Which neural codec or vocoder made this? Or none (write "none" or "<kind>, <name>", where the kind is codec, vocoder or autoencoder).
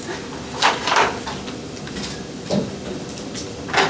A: none